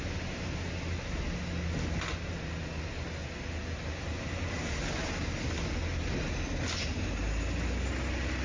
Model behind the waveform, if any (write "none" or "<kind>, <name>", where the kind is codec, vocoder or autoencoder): none